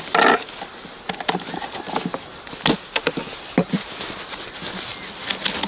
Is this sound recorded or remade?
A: recorded